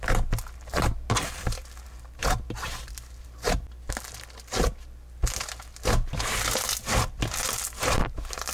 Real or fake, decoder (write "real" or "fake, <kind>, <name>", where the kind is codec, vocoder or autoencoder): real